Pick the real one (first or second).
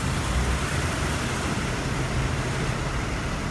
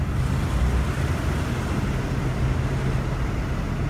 second